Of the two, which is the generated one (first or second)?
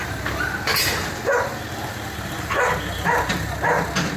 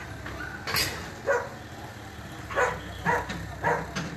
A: first